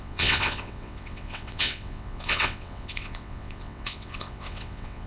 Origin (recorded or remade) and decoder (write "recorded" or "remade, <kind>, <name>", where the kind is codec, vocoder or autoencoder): remade, vocoder, WaveNeXt